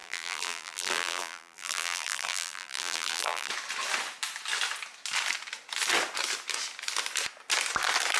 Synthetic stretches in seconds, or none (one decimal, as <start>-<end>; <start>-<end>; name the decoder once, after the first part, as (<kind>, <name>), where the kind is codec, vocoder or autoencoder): 0.0-3.5 (vocoder, BigVGAN v2)